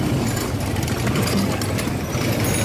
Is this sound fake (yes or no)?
no